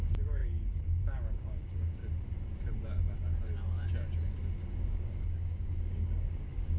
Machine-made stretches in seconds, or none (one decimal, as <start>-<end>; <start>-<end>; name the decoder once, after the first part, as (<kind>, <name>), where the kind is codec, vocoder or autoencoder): 0.0-2.0 (codec, DAC); 4.9-6.8